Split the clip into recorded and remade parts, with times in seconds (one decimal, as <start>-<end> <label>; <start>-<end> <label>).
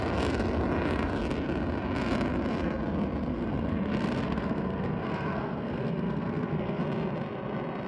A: 0.0-3.3 recorded; 3.3-6.8 remade; 6.8-7.9 recorded